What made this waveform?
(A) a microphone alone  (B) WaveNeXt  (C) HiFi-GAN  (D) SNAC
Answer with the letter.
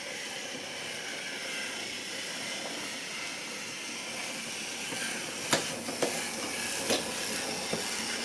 A